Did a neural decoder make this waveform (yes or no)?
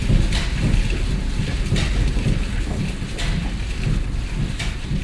no